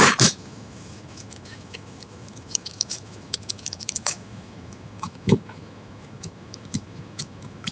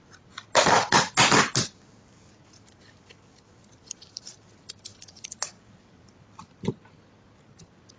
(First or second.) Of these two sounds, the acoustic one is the second